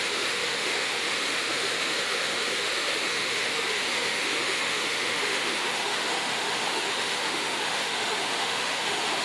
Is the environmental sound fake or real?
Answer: fake